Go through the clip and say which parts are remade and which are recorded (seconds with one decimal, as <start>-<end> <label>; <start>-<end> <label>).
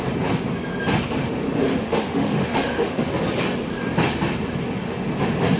0.0-1.8 recorded; 1.8-3.1 remade; 3.1-5.6 recorded